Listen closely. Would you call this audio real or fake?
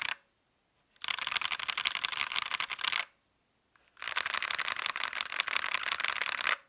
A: real